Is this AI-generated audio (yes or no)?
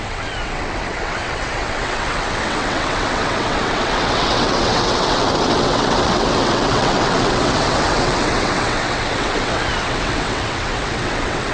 yes